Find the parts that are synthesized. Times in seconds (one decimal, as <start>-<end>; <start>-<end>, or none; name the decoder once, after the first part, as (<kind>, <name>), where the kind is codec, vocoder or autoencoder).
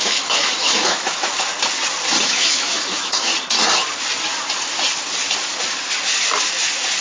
0.0-1.5 (autoencoder, DAC-VAE); 2.2-3.3